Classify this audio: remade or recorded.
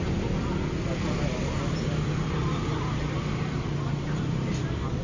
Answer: recorded